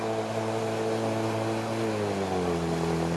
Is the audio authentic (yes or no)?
yes